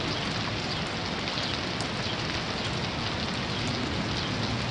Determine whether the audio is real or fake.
real